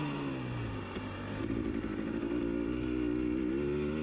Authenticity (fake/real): real